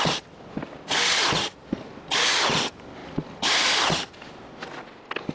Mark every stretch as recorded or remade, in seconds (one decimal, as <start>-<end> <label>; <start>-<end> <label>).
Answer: 0.0-5.3 recorded